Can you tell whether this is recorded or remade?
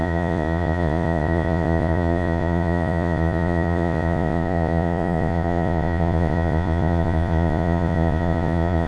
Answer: remade